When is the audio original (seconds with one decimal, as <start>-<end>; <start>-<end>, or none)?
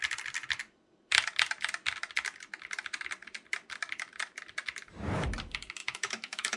0.0-5.8